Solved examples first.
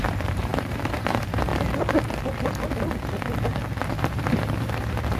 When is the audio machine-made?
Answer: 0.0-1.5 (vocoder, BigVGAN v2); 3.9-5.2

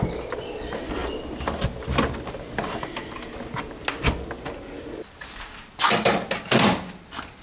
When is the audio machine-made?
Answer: none

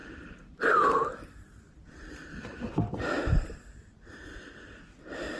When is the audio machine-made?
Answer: 0.0-3.2 (vocoder, BigVGAN v2)

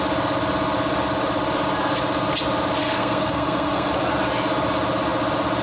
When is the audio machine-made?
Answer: 2.8-3.9 (codec, SNAC)

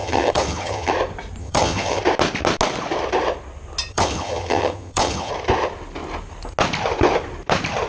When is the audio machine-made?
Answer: 0.0-0.9 (vocoder, HiFi-GAN); 1.4-2.0; 3.9-5.3

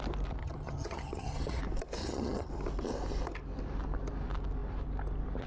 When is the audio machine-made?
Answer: 0.4-1.6 (vocoder, HiFi-GAN); 2.0-2.5

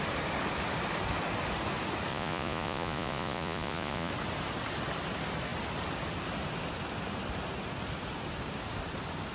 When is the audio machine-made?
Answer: 2.1-4.1 (vocoder, Vocos)